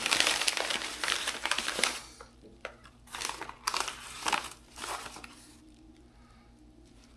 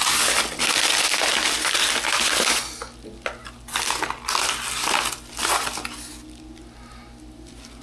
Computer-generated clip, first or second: first